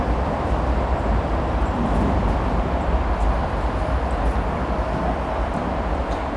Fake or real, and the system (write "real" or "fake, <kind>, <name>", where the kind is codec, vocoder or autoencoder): fake, vocoder, BigVGAN v2